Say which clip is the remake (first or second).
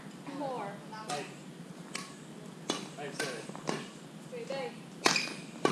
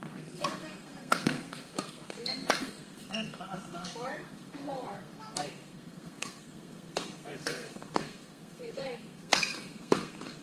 second